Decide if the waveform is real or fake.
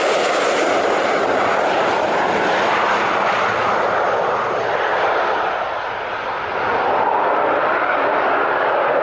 real